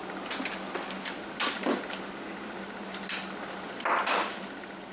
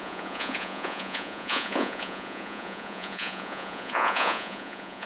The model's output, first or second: second